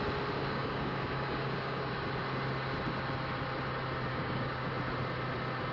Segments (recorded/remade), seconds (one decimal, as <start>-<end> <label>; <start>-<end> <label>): 0.0-0.4 recorded; 0.4-1.9 remade; 1.9-4.1 recorded; 4.1-4.7 remade; 4.7-5.7 recorded